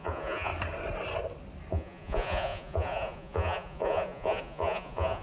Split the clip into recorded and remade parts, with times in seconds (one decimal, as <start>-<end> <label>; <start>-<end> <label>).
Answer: 0.0-0.5 remade; 0.5-1.7 recorded; 1.7-5.2 remade